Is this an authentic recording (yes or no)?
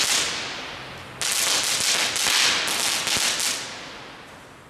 yes